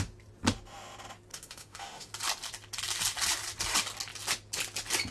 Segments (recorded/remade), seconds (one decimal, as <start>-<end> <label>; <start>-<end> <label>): 0.0-1.3 recorded; 1.3-2.1 remade; 2.1-5.1 recorded